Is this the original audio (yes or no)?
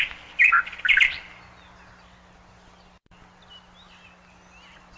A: yes